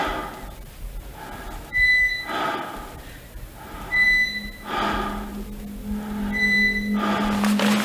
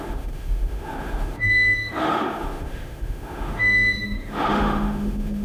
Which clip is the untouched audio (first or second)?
first